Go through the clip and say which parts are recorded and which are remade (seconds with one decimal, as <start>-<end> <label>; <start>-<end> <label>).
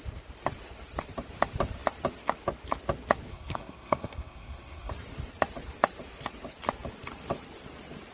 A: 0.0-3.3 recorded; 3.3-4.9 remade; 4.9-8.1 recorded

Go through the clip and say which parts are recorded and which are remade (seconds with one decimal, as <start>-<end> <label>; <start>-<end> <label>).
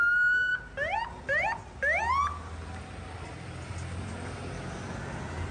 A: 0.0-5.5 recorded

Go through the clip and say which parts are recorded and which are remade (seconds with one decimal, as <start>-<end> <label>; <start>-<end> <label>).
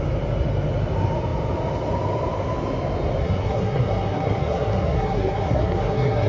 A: 0.0-3.2 recorded; 3.2-6.3 remade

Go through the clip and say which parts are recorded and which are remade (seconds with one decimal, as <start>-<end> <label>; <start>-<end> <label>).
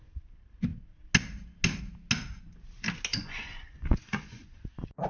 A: 0.0-3.1 recorded; 3.1-4.6 remade; 4.6-5.1 recorded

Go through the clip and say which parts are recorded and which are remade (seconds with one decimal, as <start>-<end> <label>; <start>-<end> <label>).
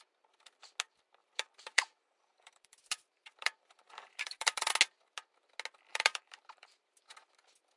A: 0.0-1.2 recorded; 1.2-4.7 remade; 4.7-5.9 recorded; 5.9-6.8 remade; 6.8-7.8 recorded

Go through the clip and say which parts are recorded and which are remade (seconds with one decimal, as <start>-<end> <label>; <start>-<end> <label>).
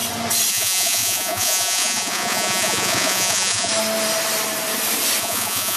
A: 0.0-0.5 recorded; 0.5-3.7 remade; 3.7-5.2 recorded; 5.2-5.8 remade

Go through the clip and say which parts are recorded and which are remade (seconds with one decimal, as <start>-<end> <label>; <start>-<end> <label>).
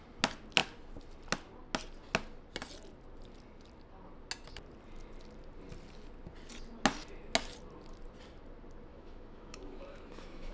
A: 0.0-8.9 recorded; 8.9-10.5 remade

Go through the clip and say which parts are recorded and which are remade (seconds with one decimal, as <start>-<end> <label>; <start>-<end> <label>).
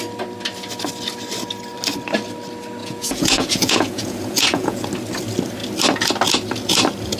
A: 0.0-2.8 recorded; 2.8-4.9 remade; 4.9-7.2 recorded